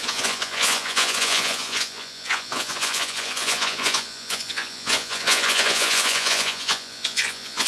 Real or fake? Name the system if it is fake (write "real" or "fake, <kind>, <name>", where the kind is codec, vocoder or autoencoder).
fake, vocoder, Vocos